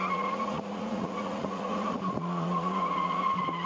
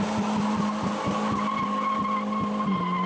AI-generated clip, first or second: first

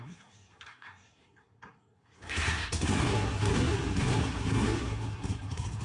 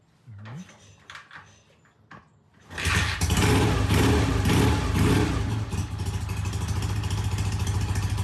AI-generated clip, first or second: first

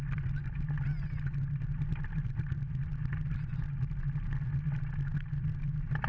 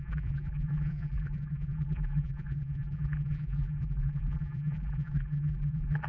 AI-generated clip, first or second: second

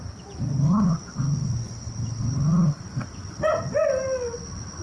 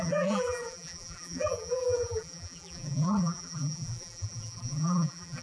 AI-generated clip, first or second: second